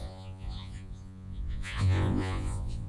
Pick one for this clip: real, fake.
fake